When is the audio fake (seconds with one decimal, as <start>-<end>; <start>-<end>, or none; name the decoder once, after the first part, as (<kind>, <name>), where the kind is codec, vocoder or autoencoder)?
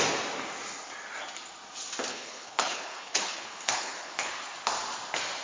2.1-4.3 (codec, HILCodec)